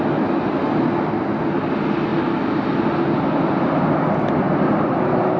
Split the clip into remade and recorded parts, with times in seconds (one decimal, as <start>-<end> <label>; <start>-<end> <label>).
0.0-5.4 recorded